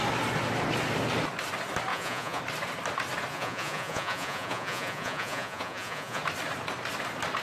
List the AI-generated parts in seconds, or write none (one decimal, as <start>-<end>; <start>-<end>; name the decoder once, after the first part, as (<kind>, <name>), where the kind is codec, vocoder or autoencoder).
1.9-2.4 (vocoder, Vocos); 3.3-6.2